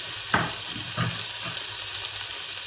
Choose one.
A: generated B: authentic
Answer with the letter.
B